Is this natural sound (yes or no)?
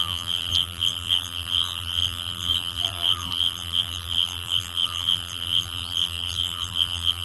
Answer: no